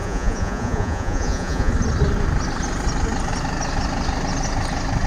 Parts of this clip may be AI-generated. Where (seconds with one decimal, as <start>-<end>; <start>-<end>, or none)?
0.0-1.7